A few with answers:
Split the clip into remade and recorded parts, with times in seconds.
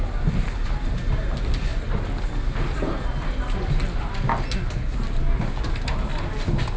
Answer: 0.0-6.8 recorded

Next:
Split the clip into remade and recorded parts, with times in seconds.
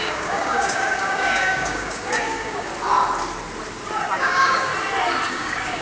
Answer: 0.0-2.7 remade; 2.7-4.2 recorded; 4.2-4.7 remade; 4.7-5.3 recorded; 5.3-5.8 remade